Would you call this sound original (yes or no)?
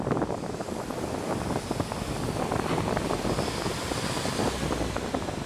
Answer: yes